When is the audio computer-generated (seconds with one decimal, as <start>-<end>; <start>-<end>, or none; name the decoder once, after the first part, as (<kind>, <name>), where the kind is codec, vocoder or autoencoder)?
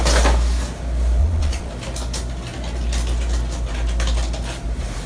1.2-1.7 (vocoder, Vocos)